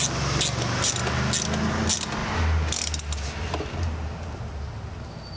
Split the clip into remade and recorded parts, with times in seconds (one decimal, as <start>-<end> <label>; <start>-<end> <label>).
0.0-5.4 recorded